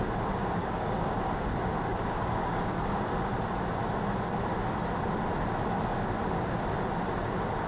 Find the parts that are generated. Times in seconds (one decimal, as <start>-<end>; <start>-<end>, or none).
0.6-1.2; 1.9-3.0